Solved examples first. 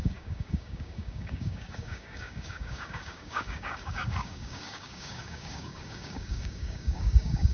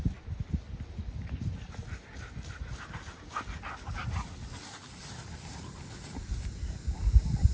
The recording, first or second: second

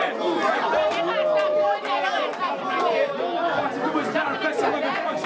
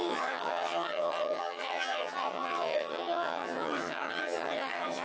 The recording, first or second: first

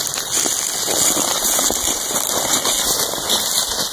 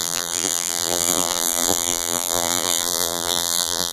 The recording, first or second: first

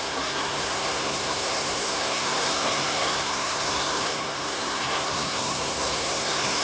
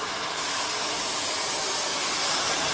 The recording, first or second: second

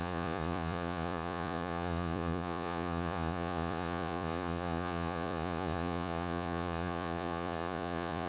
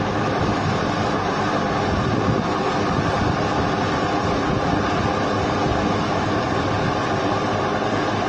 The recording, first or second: second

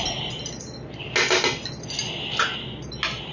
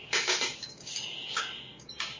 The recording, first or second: first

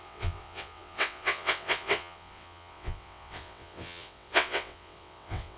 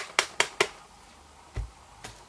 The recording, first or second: second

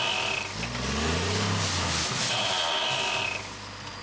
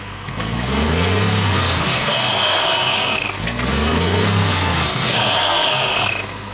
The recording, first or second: first